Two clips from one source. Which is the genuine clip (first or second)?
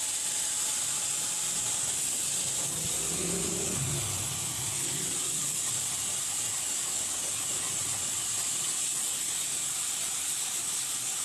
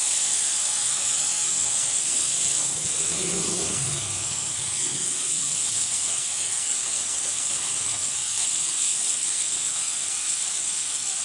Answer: first